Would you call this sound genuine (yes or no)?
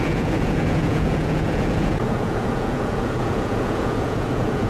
no